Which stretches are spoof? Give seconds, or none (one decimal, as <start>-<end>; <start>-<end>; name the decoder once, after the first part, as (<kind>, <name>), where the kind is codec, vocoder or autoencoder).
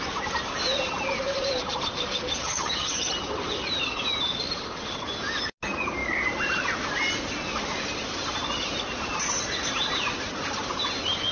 2.4-3.1 (vocoder, HiFi-GAN)